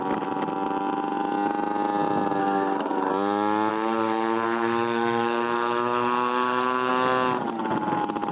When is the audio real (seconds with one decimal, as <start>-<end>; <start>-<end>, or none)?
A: 0.0-2.4; 3.1-3.7; 6.9-8.3